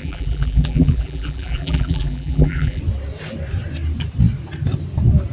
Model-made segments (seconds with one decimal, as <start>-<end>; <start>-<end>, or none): 0.0-2.8